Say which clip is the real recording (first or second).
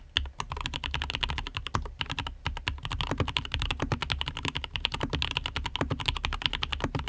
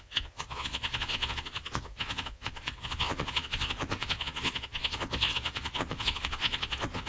first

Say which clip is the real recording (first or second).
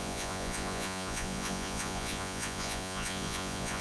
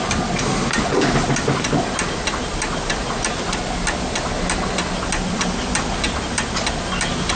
second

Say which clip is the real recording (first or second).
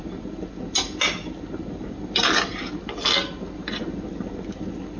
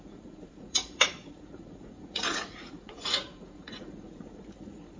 first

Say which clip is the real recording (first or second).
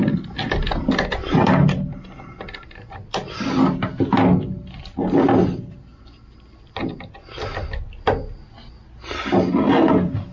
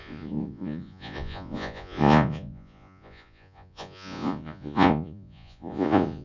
first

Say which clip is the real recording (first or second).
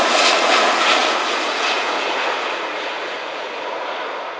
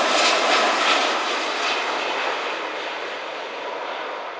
second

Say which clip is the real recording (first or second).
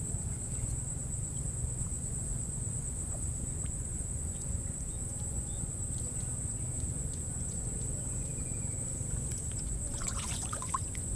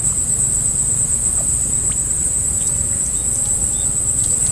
second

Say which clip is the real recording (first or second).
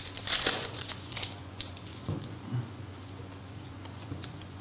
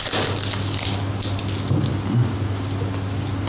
second